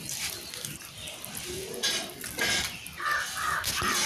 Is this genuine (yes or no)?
yes